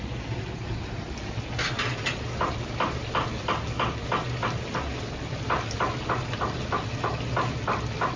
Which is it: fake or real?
real